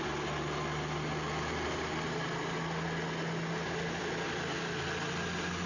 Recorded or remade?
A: recorded